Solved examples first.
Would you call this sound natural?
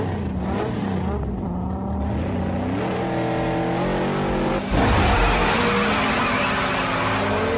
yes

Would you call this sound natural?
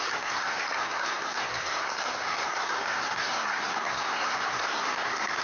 no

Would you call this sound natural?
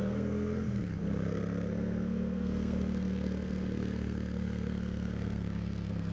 no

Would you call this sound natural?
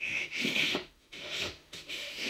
no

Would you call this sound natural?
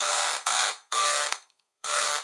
no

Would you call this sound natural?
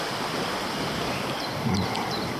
no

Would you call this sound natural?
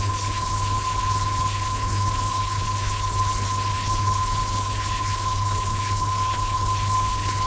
no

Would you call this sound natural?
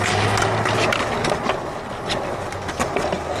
yes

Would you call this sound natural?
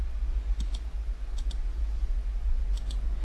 no